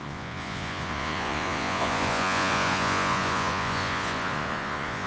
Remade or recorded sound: remade